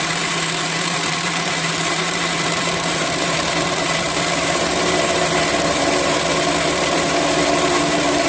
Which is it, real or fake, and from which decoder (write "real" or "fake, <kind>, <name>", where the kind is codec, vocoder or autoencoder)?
fake, vocoder, BigVGAN v2